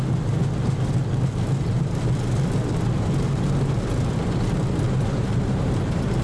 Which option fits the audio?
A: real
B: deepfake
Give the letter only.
A